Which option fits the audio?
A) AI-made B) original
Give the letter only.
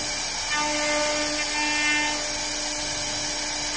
B